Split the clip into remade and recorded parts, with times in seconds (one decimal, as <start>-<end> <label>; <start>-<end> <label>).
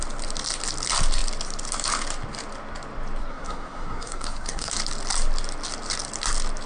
0.0-3.2 recorded; 3.2-4.7 remade; 4.7-6.7 recorded